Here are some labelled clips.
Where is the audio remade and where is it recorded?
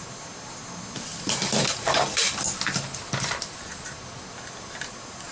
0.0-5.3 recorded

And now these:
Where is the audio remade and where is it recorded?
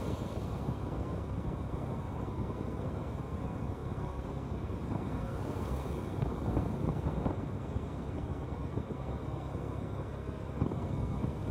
0.0-11.5 remade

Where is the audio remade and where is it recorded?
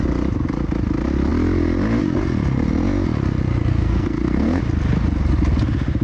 0.0-3.7 recorded; 3.7-4.6 remade; 4.6-6.0 recorded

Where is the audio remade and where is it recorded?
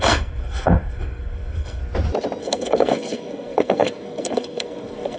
0.0-1.8 remade; 1.8-2.4 recorded; 2.4-5.2 remade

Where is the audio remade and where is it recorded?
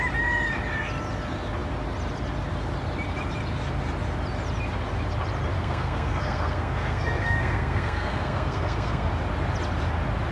0.0-5.5 recorded; 5.5-9.1 remade; 9.1-10.3 recorded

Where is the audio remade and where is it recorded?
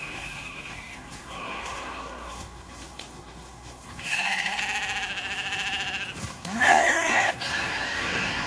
0.0-4.6 remade; 4.6-6.2 recorded; 6.2-8.5 remade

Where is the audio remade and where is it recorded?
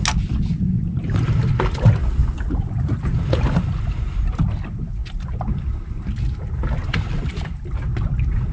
0.0-8.5 recorded